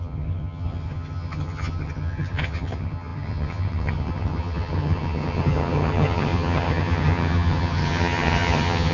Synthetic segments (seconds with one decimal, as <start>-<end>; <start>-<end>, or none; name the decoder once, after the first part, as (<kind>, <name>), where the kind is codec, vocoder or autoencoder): 0.0-8.9 (vocoder, HiFi-GAN)